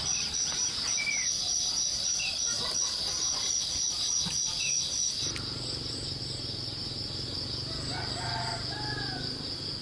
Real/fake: real